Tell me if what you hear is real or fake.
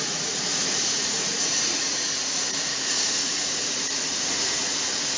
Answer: fake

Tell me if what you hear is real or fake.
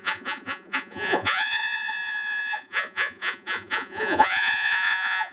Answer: fake